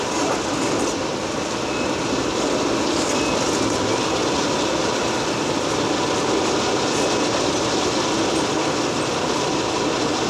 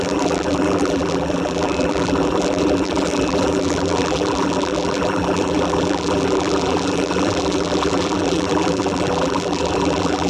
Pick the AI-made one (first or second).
second